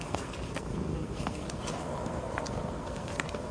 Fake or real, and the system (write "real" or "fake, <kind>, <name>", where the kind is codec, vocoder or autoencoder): fake, codec, SNAC